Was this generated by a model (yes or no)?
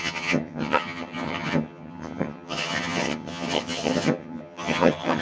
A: yes